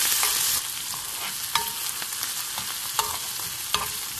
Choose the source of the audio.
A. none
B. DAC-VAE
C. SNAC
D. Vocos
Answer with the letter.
A